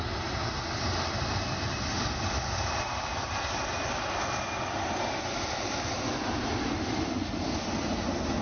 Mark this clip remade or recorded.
recorded